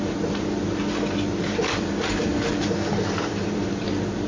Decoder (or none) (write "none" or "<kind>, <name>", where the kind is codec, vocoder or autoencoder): vocoder, BigVGAN v2